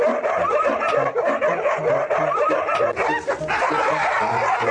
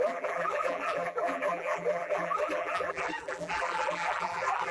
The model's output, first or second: second